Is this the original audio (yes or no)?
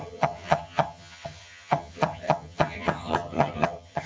no